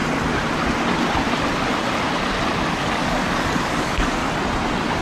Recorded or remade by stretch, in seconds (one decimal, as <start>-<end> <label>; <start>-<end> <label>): 0.0-2.7 recorded; 2.7-4.2 remade; 4.2-5.0 recorded